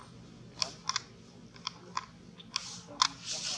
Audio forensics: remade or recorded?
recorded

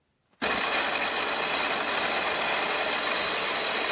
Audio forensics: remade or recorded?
recorded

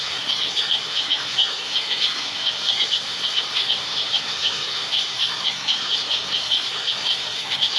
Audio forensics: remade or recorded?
remade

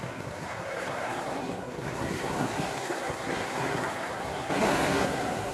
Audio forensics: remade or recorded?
remade